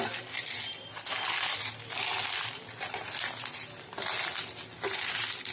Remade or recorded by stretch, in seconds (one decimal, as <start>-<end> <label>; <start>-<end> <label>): 0.0-5.5 recorded